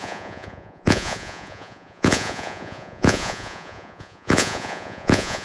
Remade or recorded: remade